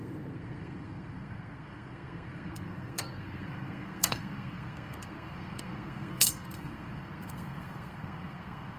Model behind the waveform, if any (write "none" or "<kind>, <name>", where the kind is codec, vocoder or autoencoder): codec, SNAC